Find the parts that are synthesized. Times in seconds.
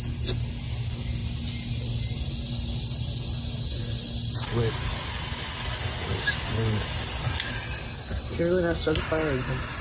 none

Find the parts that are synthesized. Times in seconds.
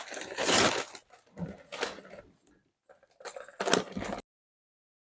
none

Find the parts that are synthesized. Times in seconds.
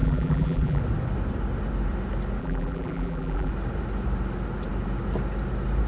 0.0-0.8 (vocoder, BigVGAN v2); 2.4-3.5